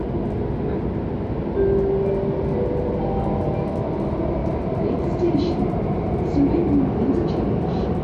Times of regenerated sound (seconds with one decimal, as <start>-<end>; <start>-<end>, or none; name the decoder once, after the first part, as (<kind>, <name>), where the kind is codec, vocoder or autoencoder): 4.4-6.5 (vocoder, BigVGAN v2)